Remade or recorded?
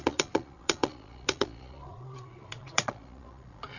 remade